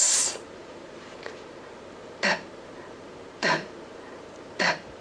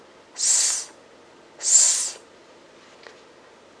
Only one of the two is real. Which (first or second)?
second